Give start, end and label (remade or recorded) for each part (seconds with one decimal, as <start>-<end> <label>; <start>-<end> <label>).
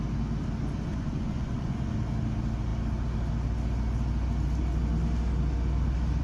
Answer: 0.0-0.9 recorded; 0.9-1.9 remade; 1.9-6.2 recorded